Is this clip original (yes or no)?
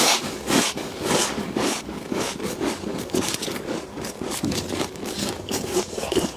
no